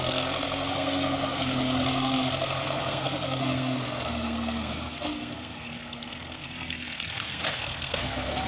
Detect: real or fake fake